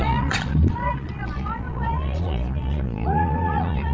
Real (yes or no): no